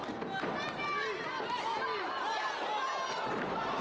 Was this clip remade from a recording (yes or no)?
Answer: no